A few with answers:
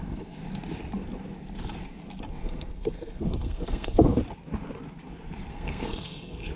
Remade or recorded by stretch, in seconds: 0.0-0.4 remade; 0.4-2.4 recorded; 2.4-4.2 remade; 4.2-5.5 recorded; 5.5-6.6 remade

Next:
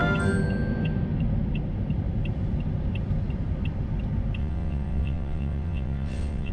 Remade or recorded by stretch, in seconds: 0.0-4.4 recorded; 4.4-6.5 remade

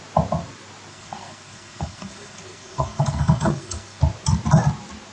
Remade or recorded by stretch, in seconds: 0.0-0.9 recorded; 0.9-4.0 remade; 4.0-5.1 recorded

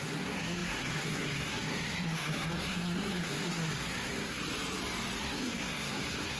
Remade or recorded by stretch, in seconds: 0.0-4.4 remade; 4.4-5.2 recorded; 5.2-6.4 remade

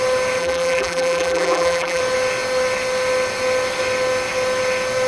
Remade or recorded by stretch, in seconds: 0.0-0.4 recorded; 0.4-2.0 remade; 2.0-5.1 recorded